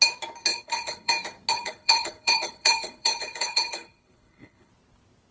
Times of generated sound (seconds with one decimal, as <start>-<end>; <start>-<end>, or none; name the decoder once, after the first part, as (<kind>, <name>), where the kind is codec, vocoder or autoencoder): 0.5-1.1 (codec, HILCodec); 1.5-4.7